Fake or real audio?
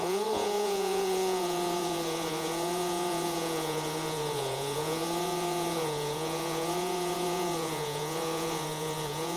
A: fake